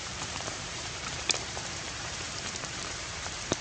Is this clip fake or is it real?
fake